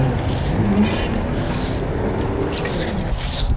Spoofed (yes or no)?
no